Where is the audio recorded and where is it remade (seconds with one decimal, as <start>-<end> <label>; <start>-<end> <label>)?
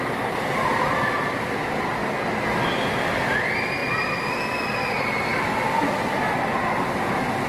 0.0-7.5 recorded